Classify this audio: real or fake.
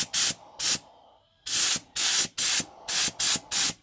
real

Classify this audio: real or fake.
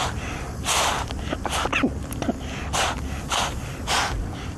real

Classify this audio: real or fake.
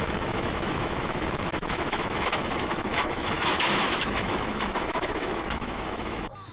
fake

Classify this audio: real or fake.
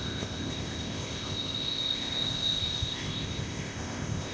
fake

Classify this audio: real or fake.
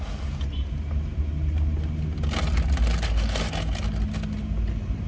real